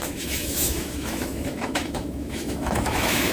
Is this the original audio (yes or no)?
no